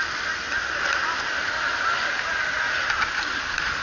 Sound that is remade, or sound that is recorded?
recorded